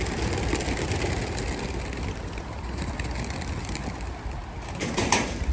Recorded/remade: recorded